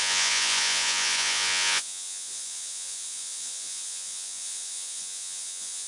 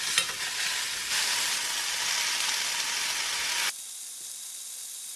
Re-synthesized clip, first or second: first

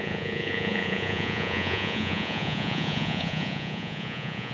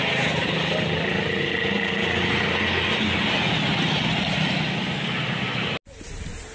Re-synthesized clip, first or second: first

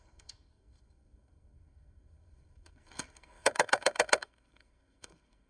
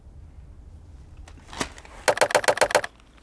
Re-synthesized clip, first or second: first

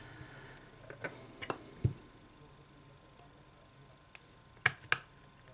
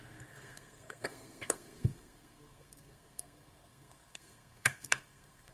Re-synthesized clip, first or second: second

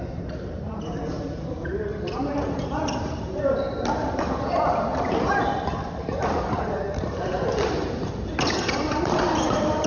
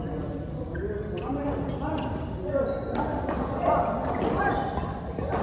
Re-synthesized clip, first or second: first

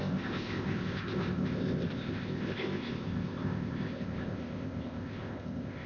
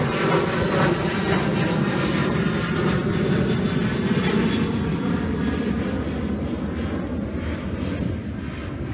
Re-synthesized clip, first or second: first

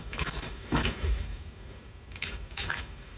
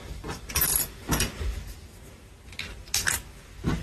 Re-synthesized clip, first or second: first